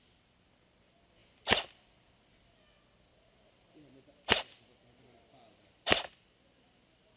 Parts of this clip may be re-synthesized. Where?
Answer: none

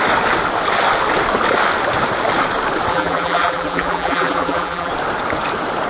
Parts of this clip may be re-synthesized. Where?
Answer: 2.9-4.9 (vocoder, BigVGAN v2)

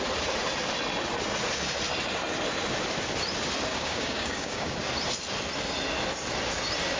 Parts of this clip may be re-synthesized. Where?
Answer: 3.7-4.7 (codec, DAC)

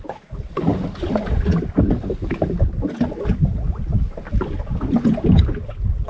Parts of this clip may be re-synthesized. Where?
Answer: none

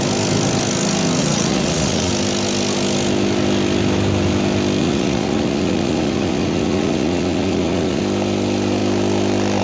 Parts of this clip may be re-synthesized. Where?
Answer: 1.2-2.1 (vocoder, Vocos); 4.8-8.0

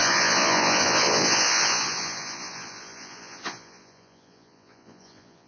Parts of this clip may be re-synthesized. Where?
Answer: 0.0-5.5 (vocoder, Vocos)